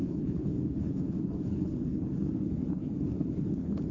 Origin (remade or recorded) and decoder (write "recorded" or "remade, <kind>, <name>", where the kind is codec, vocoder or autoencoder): remade, codec, HILCodec